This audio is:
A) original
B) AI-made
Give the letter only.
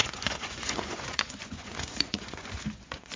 B